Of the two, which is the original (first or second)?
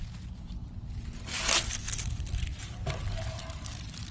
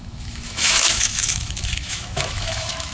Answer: first